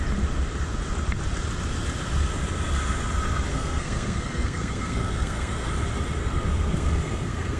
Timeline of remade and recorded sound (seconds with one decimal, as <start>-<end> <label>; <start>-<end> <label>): 0.0-3.5 recorded; 3.5-5.7 remade; 5.7-6.2 recorded; 6.2-7.6 remade